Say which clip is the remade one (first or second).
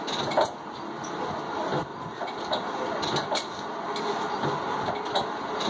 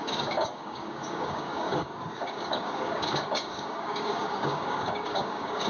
second